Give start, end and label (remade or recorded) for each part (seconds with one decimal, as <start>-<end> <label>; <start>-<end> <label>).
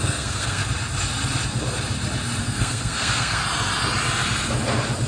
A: 0.0-0.6 remade; 0.6-2.4 recorded; 2.4-3.4 remade; 3.4-5.1 recorded